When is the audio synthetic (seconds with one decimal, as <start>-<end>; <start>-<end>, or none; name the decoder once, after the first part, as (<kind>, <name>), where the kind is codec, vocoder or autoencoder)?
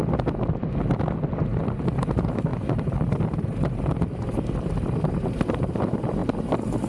1.6-6.9 (vocoder, BigVGAN v2)